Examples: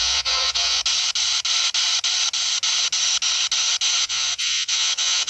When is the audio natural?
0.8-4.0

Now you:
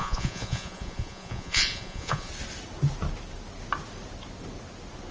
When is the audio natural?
2.3-5.1

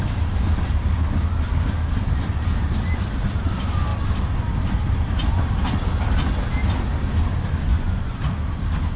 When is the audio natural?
0.0-7.7; 8.2-9.0

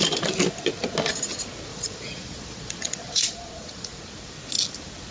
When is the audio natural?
0.0-1.7; 4.0-5.1

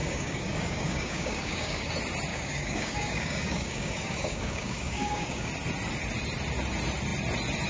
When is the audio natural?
1.9-2.3; 5.5-7.7